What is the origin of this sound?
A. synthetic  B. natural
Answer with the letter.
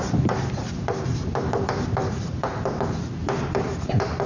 A